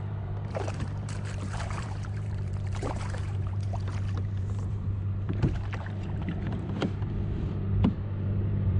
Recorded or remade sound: remade